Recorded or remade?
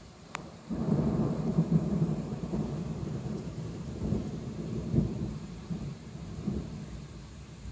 remade